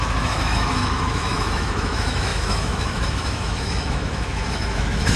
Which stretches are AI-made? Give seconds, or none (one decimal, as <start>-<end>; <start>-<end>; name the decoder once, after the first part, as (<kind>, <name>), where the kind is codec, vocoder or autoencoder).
0.0-5.2 (autoencoder, DAC-VAE)